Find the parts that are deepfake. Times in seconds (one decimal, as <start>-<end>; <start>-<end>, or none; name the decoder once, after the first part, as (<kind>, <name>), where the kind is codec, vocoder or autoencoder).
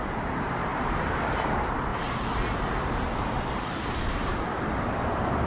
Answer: 0.0-1.9 (vocoder, BigVGAN v2); 3.5-5.5